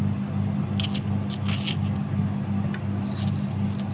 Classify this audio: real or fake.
real